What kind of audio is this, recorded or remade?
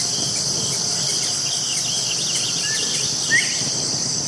recorded